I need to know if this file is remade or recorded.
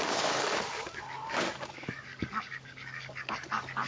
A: remade